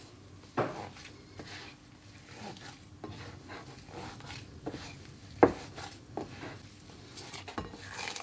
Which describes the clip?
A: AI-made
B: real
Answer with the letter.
B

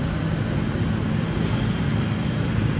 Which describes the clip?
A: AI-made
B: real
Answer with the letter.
B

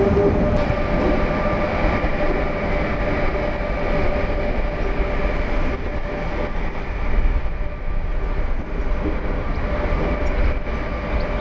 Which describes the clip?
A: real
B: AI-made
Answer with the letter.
A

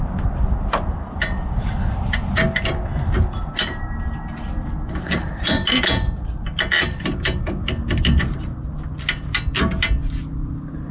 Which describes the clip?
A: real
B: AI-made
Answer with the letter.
A